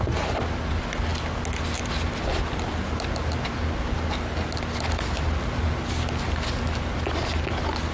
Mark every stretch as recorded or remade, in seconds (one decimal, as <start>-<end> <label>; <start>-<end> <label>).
0.0-7.9 recorded